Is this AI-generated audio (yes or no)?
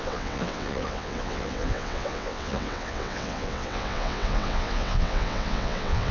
yes